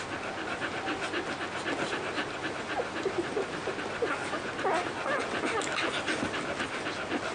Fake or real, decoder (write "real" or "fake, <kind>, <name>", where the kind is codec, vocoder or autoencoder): real